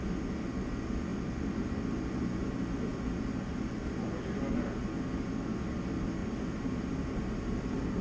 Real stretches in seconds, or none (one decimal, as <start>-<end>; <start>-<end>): 0.0-1.1; 2.1-6.2